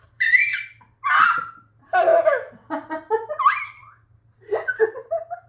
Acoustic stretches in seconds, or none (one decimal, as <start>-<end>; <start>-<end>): 0.5-1.2; 2.1-3.3; 3.8-4.9